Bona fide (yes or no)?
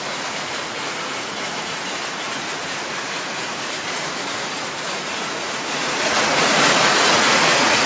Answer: no